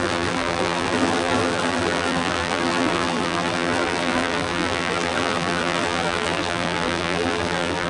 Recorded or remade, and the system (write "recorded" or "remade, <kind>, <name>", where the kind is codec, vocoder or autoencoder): remade, vocoder, BigVGAN v2